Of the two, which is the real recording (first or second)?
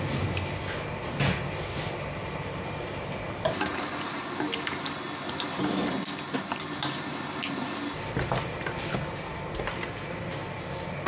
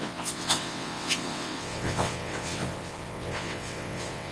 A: first